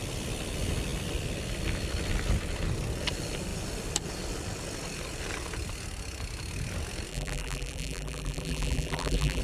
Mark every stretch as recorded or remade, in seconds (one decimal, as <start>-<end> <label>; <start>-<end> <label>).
0.0-7.1 recorded; 7.1-9.4 remade